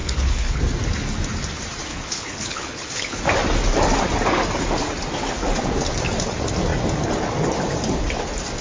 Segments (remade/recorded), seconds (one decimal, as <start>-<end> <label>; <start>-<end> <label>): 0.0-0.6 remade; 0.6-1.9 recorded; 1.9-3.2 remade; 3.2-8.6 recorded